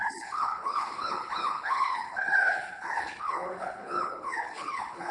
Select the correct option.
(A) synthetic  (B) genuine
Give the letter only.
A